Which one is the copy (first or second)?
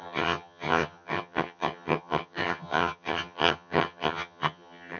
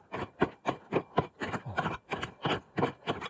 first